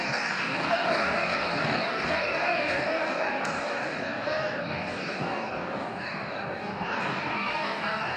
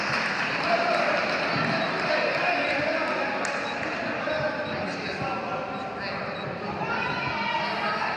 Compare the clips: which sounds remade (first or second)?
first